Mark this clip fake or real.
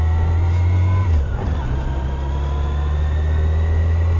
real